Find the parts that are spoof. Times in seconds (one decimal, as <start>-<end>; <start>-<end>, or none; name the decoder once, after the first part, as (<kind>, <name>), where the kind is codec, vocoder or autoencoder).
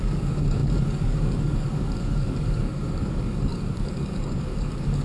0.0-5.0 (codec, DAC)